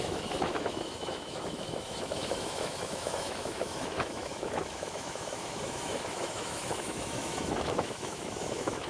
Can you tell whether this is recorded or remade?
remade